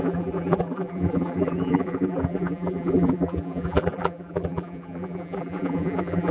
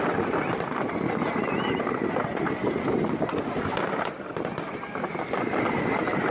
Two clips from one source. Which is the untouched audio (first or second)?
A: second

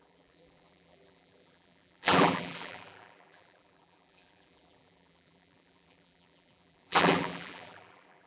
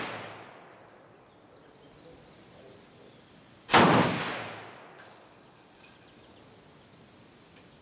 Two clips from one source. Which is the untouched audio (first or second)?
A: second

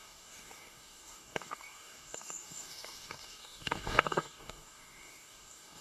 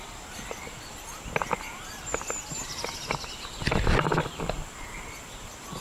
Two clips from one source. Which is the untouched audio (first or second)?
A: second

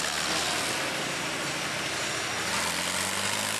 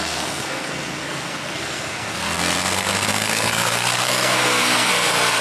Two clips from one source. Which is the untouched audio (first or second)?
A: first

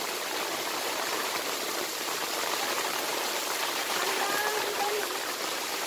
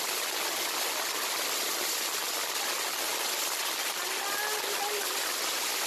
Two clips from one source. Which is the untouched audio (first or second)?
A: second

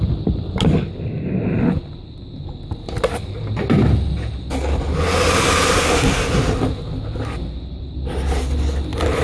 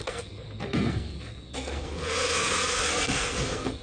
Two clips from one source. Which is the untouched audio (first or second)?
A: first